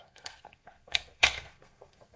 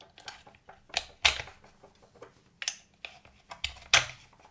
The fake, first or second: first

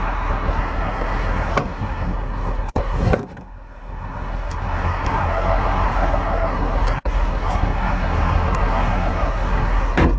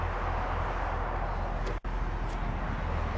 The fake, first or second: first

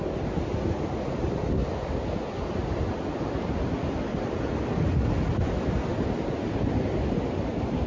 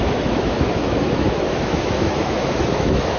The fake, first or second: second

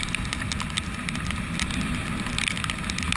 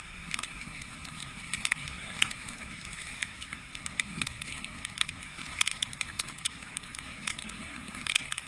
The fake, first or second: second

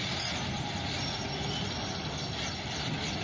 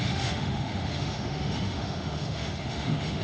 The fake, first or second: second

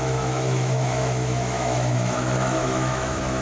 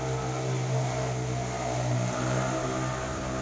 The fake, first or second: first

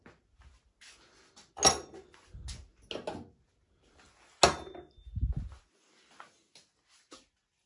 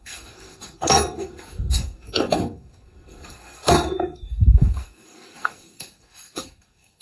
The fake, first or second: second